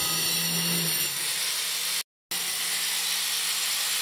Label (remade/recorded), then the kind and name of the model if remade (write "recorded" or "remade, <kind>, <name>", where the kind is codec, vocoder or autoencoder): recorded